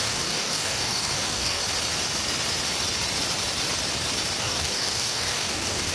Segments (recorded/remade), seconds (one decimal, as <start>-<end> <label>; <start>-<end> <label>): 0.0-1.6 remade; 1.6-4.4 recorded; 4.4-5.9 remade